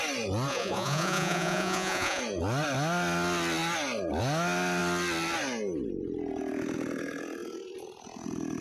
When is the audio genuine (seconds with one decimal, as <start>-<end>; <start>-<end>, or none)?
0.0-0.5; 2.2-8.6